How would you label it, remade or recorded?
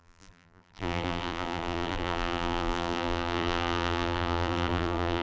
remade